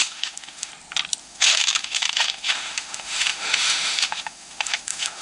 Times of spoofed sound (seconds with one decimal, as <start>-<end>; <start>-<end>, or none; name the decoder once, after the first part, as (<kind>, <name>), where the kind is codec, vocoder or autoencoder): 0.0-0.7 (autoencoder, DAC-VAE); 1.2-5.2